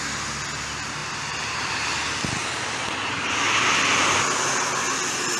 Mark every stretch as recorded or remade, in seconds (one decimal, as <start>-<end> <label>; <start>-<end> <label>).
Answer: 0.0-1.0 recorded; 1.0-4.2 remade; 4.2-5.4 recorded